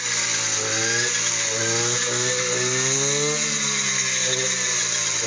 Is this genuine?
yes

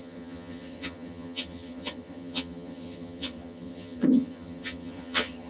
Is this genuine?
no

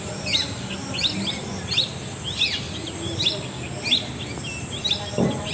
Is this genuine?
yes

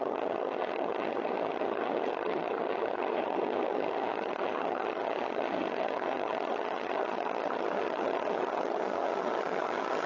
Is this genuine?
no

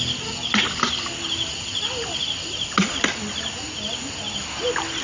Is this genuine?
yes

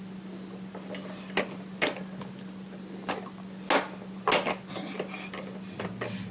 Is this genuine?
yes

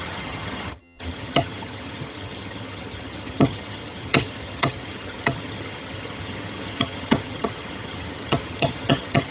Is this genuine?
no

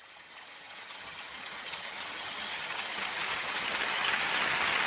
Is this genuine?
no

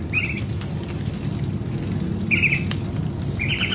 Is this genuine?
yes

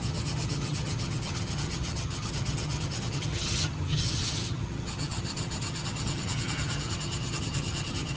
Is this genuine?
no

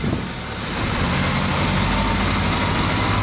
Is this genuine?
yes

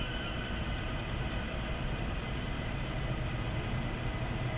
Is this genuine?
yes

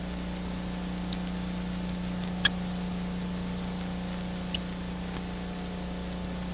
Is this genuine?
yes